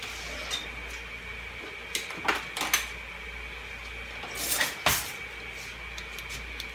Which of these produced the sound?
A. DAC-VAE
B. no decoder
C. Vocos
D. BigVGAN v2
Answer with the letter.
B